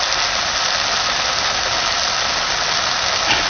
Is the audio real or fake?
real